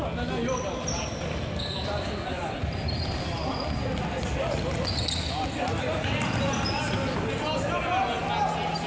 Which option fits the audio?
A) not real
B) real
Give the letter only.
B